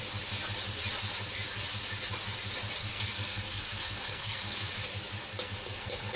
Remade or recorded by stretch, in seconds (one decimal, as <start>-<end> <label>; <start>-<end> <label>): 0.0-2.8 recorded; 2.8-4.7 remade; 4.7-5.3 recorded; 5.3-6.2 remade